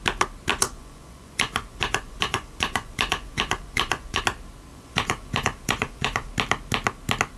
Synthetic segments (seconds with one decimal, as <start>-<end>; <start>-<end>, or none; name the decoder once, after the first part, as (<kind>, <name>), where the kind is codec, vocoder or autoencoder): 0.5-4.2 (vocoder, Vocos); 4.7-6.3